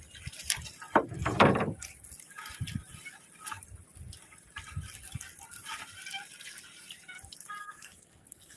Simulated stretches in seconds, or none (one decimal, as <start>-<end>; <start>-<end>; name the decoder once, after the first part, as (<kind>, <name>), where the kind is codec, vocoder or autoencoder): 7.6-8.6 (codec, SNAC)